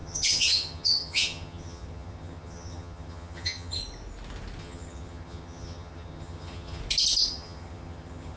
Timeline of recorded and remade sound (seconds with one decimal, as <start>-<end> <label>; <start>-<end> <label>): 0.0-3.8 remade; 3.8-4.6 recorded; 4.6-6.8 remade; 6.8-7.3 recorded; 7.3-8.4 remade